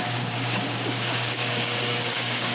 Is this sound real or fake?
fake